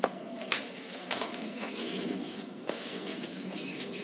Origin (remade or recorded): remade